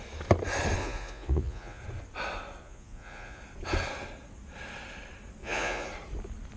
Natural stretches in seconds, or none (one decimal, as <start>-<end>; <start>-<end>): 0.0-0.8; 1.8-2.6; 3.4-5.4; 5.9-6.6